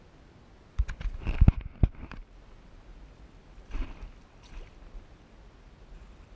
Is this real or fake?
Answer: real